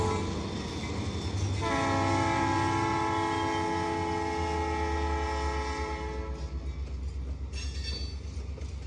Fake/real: real